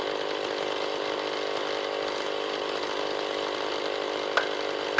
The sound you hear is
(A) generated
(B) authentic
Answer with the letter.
B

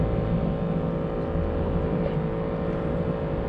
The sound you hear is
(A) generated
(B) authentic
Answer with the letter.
B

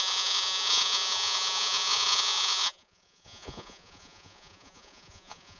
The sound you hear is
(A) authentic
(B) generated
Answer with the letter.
B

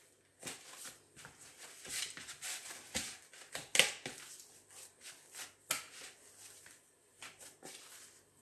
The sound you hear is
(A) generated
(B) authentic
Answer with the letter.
B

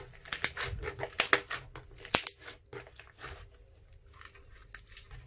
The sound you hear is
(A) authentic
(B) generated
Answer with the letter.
A